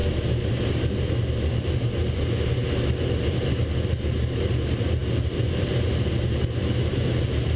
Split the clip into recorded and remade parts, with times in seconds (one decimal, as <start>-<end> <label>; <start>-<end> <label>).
0.0-7.6 recorded